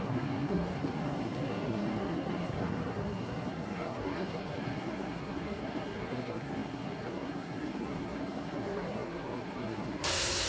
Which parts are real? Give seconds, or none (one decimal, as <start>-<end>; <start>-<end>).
none